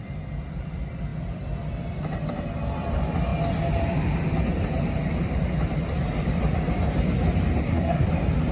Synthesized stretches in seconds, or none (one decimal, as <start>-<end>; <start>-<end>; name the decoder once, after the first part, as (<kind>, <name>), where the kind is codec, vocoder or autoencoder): 7.6-8.1 (codec, SNAC)